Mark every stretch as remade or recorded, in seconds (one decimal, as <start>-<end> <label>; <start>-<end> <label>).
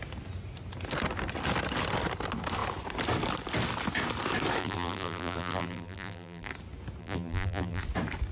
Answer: 0.0-4.6 recorded; 4.6-6.5 remade; 6.5-7.0 recorded; 7.0-7.8 remade; 7.8-8.3 recorded